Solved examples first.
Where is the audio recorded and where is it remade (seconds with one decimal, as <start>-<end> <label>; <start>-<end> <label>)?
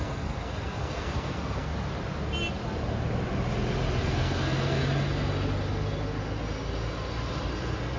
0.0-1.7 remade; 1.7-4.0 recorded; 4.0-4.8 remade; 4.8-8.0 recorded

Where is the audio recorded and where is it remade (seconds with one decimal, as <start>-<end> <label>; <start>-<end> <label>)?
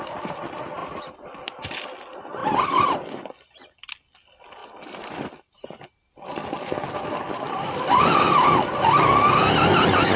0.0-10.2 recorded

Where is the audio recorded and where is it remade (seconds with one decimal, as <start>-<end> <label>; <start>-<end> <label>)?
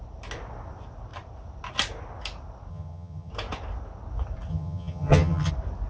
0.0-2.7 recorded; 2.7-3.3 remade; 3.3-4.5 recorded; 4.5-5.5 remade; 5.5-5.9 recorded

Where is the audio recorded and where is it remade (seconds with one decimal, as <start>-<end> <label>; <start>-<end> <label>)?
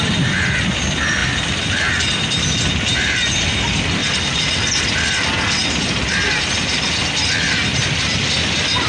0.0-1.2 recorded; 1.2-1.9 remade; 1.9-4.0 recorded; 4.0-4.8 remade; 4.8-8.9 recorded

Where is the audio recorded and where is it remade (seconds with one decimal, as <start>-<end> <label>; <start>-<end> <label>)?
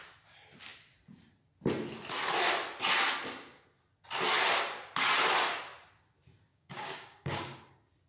0.0-6.5 recorded; 6.5-7.6 remade; 7.6-8.1 recorded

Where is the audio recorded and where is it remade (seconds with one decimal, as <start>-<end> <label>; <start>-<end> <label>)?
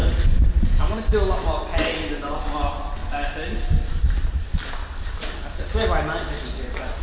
0.0-7.0 recorded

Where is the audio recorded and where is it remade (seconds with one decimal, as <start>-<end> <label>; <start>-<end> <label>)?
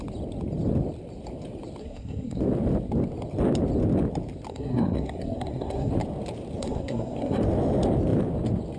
0.0-1.8 recorded; 1.8-2.4 remade; 2.4-4.5 recorded; 4.5-5.9 remade; 5.9-6.6 recorded; 6.6-7.4 remade; 7.4-8.8 recorded